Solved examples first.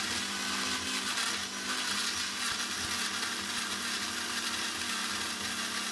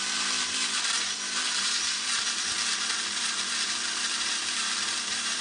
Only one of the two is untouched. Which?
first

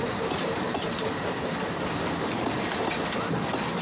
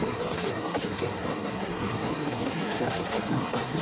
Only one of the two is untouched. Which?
first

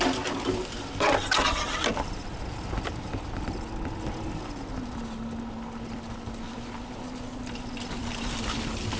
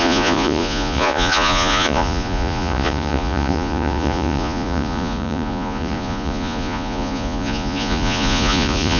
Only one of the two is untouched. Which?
first